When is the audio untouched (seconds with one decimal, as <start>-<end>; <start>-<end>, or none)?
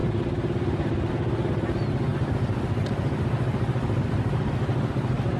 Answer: 0.0-5.4